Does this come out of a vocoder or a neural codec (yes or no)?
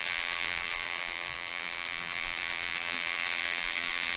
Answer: yes